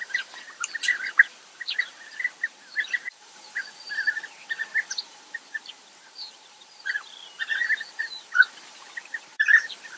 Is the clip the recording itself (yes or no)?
no